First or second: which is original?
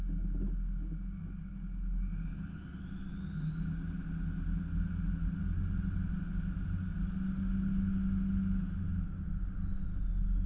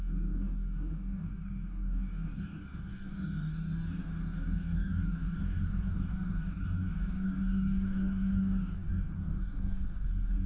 first